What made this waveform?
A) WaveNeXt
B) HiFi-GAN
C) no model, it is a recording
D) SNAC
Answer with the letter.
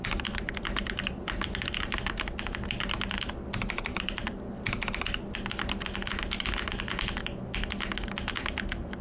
C